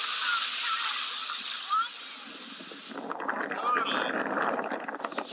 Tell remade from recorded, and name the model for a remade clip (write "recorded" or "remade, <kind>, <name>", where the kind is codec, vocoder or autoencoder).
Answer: recorded